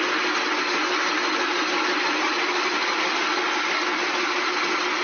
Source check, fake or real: real